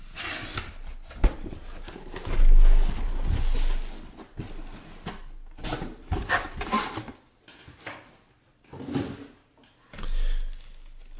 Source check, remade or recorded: recorded